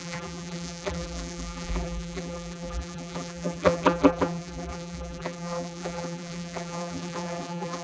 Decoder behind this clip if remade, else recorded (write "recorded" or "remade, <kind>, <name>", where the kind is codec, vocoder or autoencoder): remade, vocoder, BigVGAN v2